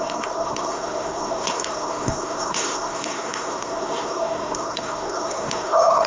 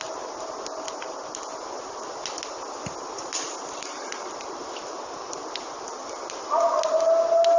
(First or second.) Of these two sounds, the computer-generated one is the first